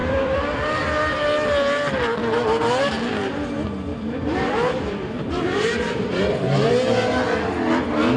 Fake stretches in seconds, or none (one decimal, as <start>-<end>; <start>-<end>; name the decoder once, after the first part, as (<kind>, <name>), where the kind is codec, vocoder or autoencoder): 0.0-0.6 (vocoder, BigVGAN v2); 3.9-6.7